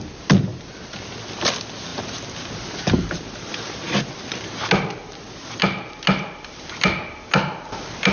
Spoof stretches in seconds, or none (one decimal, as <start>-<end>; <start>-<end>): 0.5-1.1